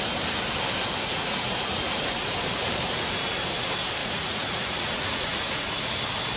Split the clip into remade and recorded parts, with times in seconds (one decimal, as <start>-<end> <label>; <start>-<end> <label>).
0.0-1.0 recorded; 1.0-1.9 remade; 1.9-4.0 recorded; 4.0-5.9 remade; 5.9-6.4 recorded